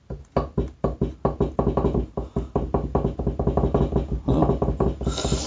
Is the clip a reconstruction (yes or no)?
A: no